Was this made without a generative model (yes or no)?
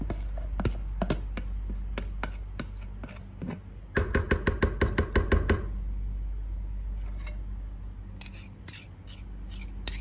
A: yes